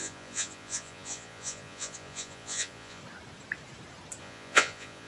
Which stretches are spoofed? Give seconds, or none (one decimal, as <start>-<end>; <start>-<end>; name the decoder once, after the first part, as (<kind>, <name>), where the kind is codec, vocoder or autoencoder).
0.0-3.0 (vocoder, Vocos); 4.2-5.1